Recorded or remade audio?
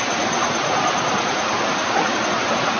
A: recorded